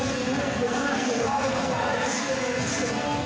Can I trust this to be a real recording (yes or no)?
no